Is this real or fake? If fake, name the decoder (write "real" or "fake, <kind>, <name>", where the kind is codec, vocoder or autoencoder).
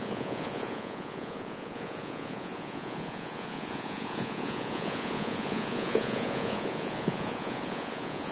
fake, vocoder, Vocos